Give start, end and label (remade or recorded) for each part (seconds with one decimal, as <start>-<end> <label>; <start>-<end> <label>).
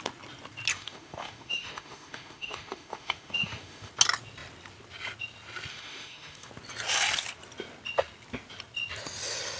0.0-0.7 recorded; 0.7-3.9 remade; 3.9-5.7 recorded; 5.7-6.5 remade; 6.5-9.6 recorded